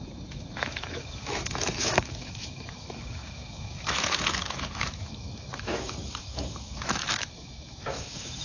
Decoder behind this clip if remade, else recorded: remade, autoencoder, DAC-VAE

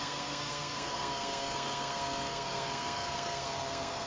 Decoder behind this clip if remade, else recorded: remade, codec, SNAC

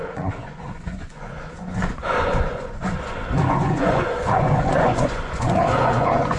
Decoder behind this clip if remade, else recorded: remade, vocoder, Vocos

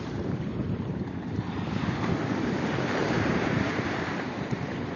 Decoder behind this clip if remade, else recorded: remade, vocoder, BigVGAN v2